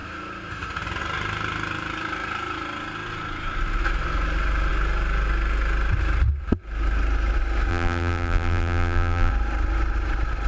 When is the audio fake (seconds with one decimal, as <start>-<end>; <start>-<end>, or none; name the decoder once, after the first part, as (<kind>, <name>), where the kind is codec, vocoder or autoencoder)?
7.7-9.3 (vocoder, BigVGAN v2)

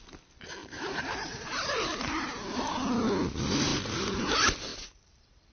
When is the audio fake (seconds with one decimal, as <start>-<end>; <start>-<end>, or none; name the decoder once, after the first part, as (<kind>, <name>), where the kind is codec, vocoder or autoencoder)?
0.6-2.7 (vocoder, BigVGAN v2); 4.7-5.5

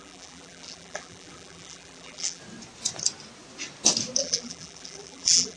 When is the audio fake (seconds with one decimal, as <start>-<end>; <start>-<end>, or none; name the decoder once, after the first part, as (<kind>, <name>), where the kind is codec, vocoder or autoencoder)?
0.0-2.4 (vocoder, BigVGAN v2); 4.2-5.6

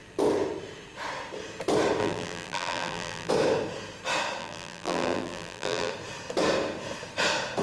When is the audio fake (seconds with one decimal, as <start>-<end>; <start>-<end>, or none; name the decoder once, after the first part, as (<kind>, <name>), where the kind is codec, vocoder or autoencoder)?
2.0-3.3 (vocoder, BigVGAN v2); 4.4-5.9